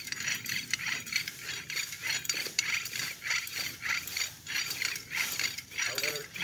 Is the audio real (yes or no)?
no